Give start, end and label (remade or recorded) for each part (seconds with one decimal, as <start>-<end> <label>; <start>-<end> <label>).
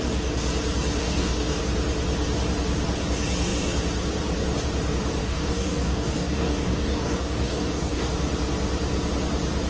0.0-1.0 recorded; 1.0-1.6 remade; 1.6-5.2 recorded; 5.2-8.1 remade; 8.1-9.7 recorded